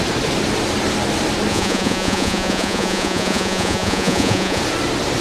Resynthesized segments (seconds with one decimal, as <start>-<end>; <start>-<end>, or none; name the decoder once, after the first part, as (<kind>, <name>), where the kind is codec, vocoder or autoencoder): 1.5-4.6 (vocoder, Vocos)